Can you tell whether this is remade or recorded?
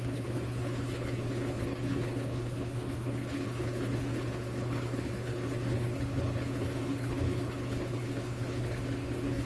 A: remade